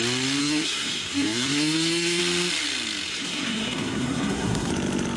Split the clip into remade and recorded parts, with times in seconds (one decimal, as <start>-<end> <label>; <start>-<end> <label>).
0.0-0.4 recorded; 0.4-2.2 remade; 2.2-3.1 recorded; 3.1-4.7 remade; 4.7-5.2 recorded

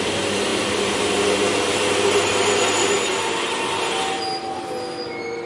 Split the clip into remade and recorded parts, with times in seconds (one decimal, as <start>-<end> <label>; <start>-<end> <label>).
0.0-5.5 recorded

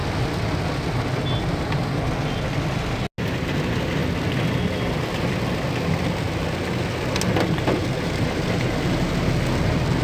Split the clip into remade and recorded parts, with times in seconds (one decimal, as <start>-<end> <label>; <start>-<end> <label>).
0.0-10.0 recorded

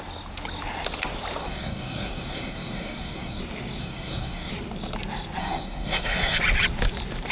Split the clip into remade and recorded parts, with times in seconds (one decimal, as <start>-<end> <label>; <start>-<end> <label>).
0.0-1.4 recorded; 1.4-3.4 remade; 3.4-3.8 recorded; 3.8-4.5 remade; 4.5-5.4 recorded; 5.4-6.4 remade; 6.4-7.3 recorded

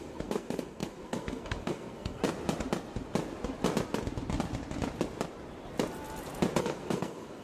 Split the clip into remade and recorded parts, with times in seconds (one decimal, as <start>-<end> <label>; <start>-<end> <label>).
0.0-2.2 remade; 2.2-6.6 recorded; 6.6-7.4 remade